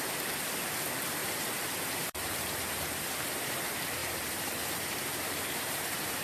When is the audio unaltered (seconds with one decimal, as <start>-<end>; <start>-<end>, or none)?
0.0-1.2; 3.6-4.0